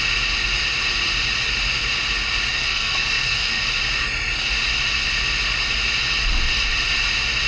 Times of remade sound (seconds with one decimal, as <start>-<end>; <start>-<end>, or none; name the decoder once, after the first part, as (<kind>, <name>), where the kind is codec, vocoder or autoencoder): 2.5-3.6 (codec, SNAC)